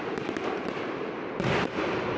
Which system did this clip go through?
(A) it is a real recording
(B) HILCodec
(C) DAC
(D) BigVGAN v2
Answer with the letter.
D